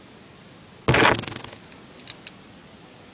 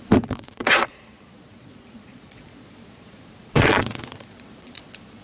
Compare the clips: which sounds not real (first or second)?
second